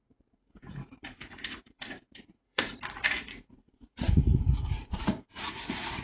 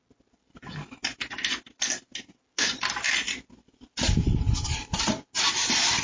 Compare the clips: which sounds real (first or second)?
second